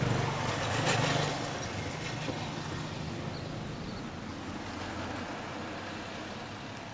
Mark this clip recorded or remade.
recorded